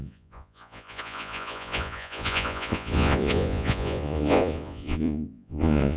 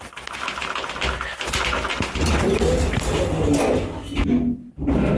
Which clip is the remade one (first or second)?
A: first